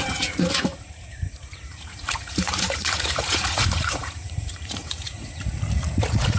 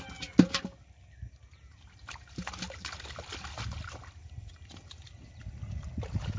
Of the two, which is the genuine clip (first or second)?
second